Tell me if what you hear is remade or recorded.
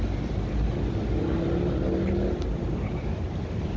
recorded